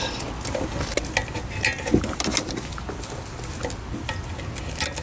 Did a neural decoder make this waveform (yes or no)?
no